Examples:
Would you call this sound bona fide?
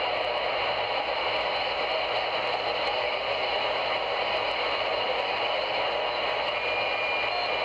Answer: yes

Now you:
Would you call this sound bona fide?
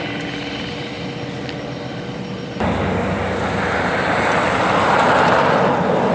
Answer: yes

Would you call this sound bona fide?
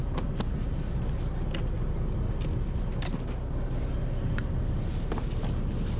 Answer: yes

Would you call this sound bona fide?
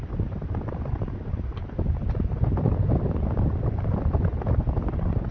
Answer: yes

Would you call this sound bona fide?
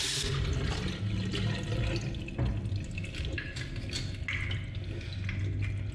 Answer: yes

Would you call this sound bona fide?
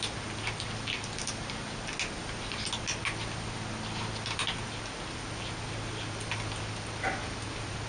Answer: yes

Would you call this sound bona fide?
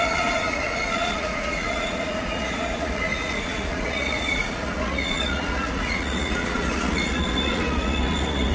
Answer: no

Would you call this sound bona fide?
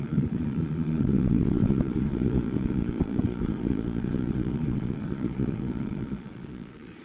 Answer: no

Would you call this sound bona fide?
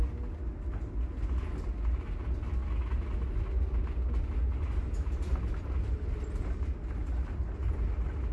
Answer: yes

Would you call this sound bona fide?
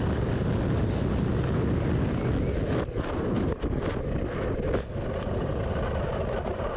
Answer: yes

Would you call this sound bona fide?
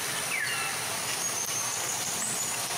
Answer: yes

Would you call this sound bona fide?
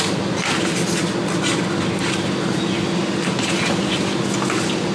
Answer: yes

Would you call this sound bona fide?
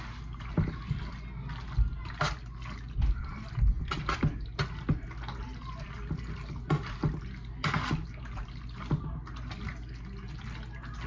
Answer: yes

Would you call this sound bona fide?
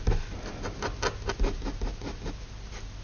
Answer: yes